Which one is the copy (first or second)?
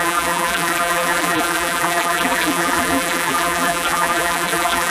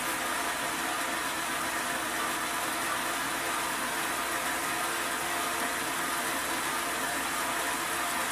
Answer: first